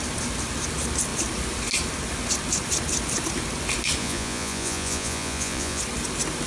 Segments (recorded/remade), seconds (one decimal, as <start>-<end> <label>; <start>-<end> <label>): 0.0-4.0 recorded; 4.0-5.8 remade; 5.8-6.5 recorded